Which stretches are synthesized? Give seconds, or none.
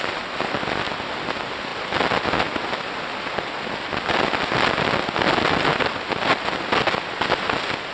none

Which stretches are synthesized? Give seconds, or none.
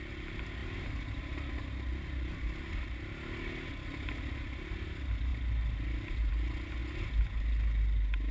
none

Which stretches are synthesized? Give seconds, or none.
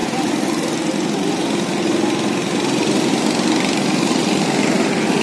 none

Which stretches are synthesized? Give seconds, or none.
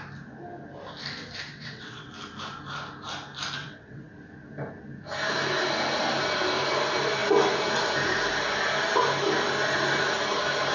1.5-2.1 (vocoder, WaveNeXt); 3.6-4.1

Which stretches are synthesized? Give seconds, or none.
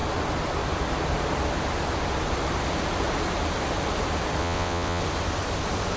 4.4-5.0 (vocoder, WaveNeXt)